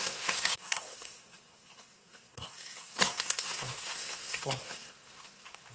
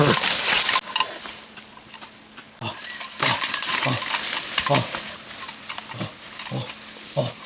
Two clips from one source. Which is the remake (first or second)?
first